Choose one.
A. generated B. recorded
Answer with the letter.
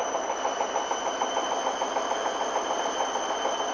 B